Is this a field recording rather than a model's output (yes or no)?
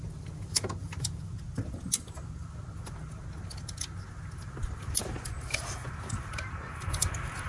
yes